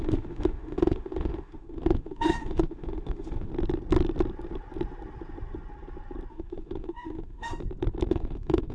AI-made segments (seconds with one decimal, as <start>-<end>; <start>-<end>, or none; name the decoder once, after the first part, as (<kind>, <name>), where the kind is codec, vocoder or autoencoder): 0.0-3.5 (autoencoder, DAC-VAE); 6.3-7.5; 8.1-8.7